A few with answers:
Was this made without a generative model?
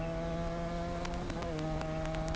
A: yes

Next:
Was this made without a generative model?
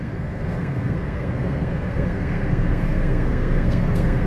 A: no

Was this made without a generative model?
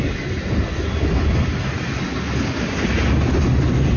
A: yes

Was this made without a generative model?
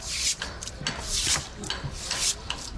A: yes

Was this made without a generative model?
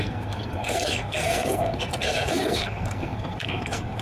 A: no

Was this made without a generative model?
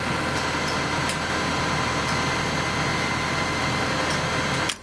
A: yes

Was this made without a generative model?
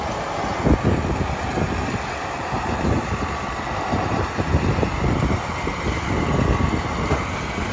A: yes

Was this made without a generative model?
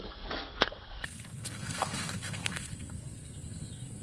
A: no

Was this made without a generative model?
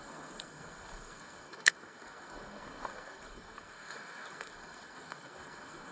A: no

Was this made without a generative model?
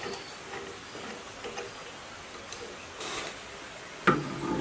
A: yes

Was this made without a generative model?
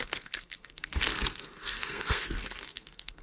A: no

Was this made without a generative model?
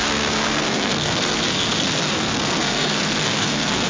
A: no